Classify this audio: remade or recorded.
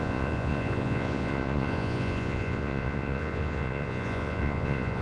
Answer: remade